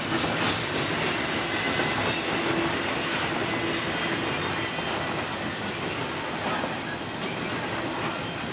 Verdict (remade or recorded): recorded